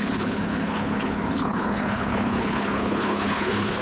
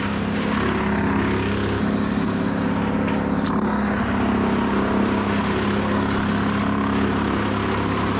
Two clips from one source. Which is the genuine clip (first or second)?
second